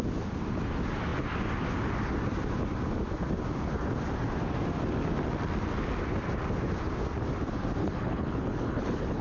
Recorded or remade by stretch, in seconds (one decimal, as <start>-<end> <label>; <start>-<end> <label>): 0.0-7.8 recorded; 7.8-9.2 remade